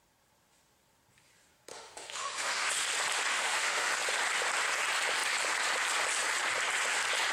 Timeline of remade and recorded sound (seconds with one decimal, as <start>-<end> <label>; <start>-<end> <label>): 0.0-1.7 recorded; 1.7-2.7 remade; 2.7-3.3 recorded; 3.3-3.9 remade; 3.9-7.3 recorded